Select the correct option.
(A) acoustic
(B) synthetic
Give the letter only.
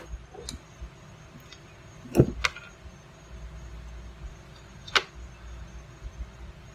A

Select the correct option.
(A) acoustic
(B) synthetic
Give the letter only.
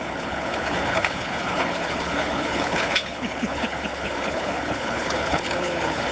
B